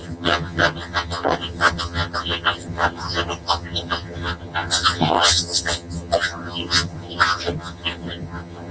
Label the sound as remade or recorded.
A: remade